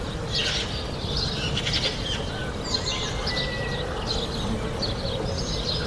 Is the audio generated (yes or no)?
no